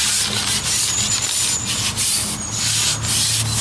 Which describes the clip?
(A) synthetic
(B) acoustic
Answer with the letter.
B